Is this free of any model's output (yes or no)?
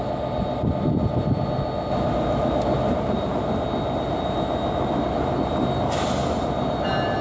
yes